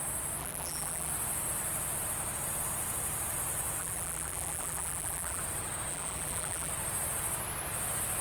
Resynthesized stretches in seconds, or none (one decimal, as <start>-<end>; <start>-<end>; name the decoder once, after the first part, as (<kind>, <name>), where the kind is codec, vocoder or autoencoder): 0.4-1.1 (vocoder, BigVGAN v2); 3.8-5.4; 5.9-6.7